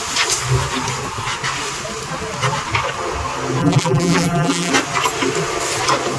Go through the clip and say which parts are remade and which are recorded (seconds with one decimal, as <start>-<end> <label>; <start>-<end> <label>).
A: 0.0-3.6 recorded; 3.6-4.7 remade; 4.7-6.2 recorded